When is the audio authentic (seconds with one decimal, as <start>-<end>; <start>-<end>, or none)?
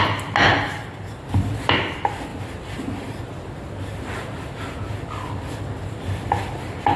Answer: 2.3-5.5